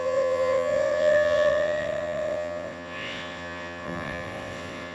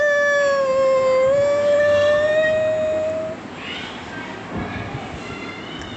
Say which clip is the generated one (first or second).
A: first